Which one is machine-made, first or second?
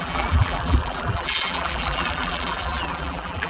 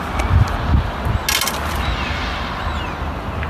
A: first